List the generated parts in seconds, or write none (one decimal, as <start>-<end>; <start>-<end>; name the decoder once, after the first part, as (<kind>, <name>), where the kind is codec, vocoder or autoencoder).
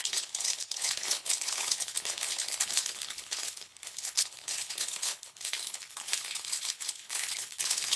0.0-8.0 (codec, HILCodec)